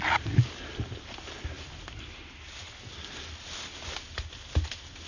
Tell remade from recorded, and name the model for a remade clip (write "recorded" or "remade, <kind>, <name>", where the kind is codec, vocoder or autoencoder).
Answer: recorded